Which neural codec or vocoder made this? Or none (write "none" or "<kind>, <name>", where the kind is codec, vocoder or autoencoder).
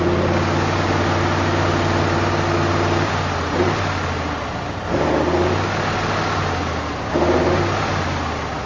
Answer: none